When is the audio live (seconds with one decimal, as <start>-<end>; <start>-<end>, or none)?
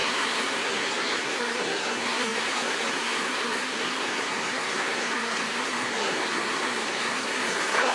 none